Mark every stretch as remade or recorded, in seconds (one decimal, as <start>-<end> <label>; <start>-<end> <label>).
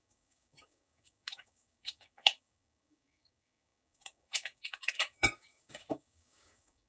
0.0-6.9 remade